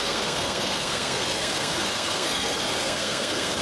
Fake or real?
fake